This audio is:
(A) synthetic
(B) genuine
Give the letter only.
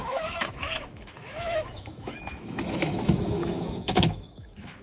A